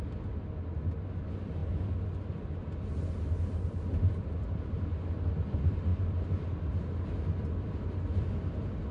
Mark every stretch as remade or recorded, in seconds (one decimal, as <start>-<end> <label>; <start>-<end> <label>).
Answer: 0.0-8.9 recorded